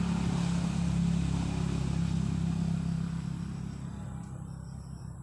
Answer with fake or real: real